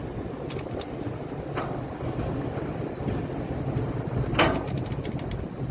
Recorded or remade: recorded